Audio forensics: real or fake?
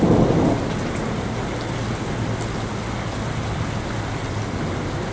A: real